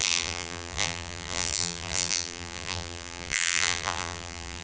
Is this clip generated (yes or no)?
yes